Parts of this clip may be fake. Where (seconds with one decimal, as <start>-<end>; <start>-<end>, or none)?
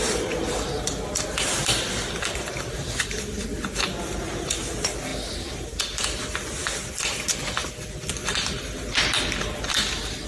0.0-5.1; 5.8-10.3